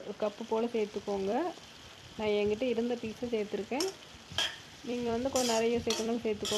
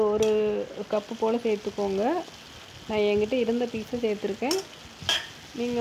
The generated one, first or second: first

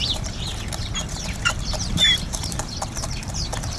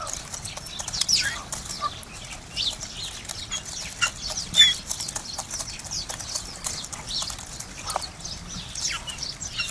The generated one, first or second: first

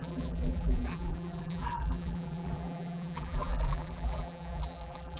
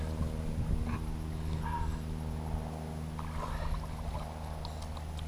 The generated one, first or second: first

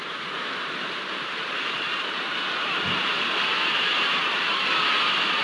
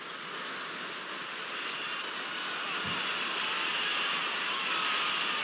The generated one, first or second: first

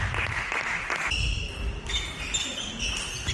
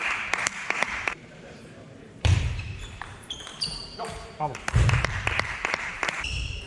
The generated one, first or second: second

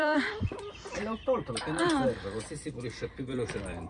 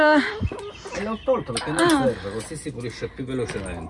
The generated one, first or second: first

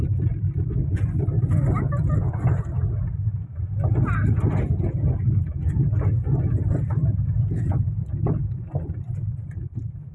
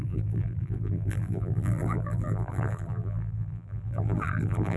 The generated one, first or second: second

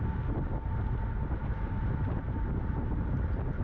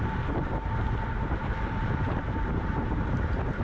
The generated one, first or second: second